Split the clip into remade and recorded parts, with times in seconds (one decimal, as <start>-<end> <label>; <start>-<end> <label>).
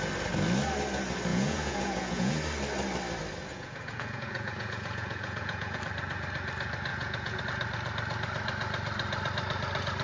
0.0-1.3 recorded; 1.3-2.3 remade; 2.3-3.5 recorded; 3.5-5.8 remade; 5.8-6.9 recorded; 6.9-7.4 remade; 7.4-10.0 recorded